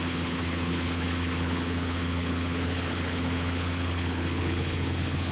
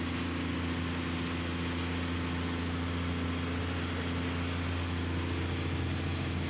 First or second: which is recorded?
second